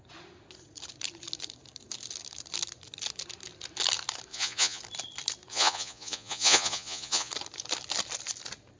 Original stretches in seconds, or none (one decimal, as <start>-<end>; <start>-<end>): 0.0-4.3; 4.8-5.5; 7.3-8.8